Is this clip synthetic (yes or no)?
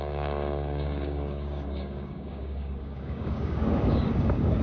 yes